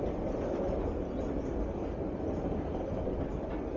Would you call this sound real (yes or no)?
yes